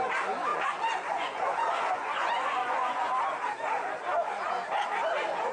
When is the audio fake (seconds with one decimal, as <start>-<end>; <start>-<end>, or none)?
0.5-3.1